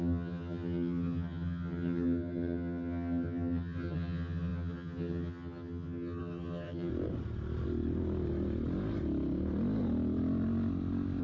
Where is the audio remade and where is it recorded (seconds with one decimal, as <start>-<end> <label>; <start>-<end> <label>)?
0.0-6.9 remade; 6.9-11.2 recorded